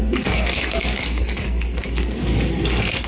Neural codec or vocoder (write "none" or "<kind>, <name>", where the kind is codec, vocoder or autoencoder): codec, SNAC